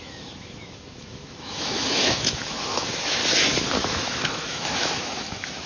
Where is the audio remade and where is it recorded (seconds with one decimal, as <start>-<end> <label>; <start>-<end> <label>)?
0.0-3.2 remade; 3.2-3.9 recorded; 3.9-5.7 remade